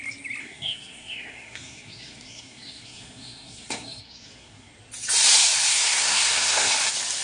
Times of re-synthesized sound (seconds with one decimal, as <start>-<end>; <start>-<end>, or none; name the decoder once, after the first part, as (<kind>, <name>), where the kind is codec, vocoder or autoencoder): 0.4-4.7 (codec, SNAC); 5.7-6.7